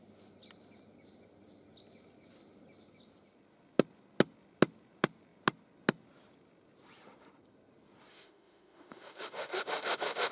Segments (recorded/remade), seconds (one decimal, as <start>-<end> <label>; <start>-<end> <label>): 0.0-8.1 recorded; 8.1-10.3 remade